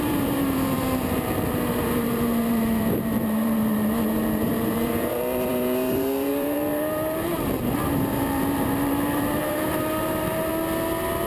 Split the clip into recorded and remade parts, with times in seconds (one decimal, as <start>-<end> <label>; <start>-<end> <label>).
0.0-10.5 remade; 10.5-11.3 recorded